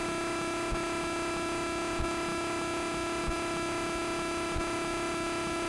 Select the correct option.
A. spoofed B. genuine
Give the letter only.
B